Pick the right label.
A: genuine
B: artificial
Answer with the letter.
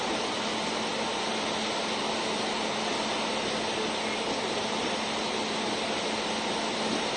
A